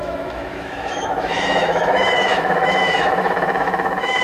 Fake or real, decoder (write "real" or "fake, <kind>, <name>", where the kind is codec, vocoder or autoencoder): fake, autoencoder, DAC-VAE